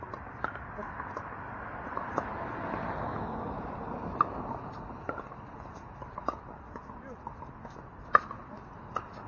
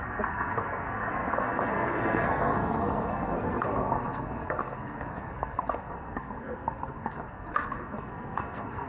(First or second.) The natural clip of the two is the first